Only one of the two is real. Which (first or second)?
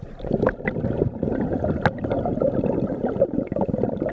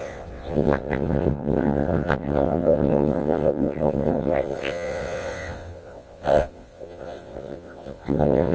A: first